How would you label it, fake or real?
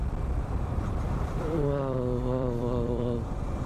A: fake